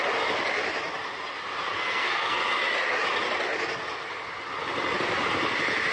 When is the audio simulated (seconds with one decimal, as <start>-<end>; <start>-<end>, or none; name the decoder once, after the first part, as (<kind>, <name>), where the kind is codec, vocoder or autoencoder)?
1.7-2.4 (codec, SNAC)